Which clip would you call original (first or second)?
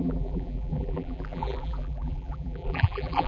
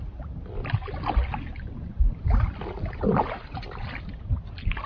second